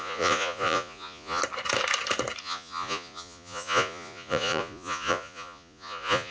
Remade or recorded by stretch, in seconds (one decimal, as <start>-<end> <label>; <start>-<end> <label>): 0.0-1.4 remade; 1.4-2.4 recorded; 2.4-6.3 remade